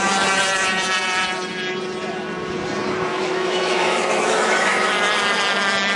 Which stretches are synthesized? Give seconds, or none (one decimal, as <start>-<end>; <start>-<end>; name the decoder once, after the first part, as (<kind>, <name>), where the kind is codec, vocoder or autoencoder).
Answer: 3.1-4.9 (autoencoder, DAC-VAE)